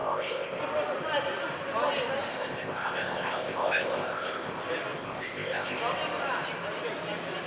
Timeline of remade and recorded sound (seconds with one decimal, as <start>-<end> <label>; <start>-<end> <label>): 0.0-0.6 remade; 0.6-2.3 recorded; 2.3-4.6 remade; 4.6-5.0 recorded; 5.0-5.8 remade; 5.8-7.5 recorded